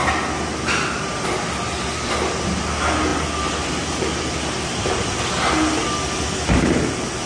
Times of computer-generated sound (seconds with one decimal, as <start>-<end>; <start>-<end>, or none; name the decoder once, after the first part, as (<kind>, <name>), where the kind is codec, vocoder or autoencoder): none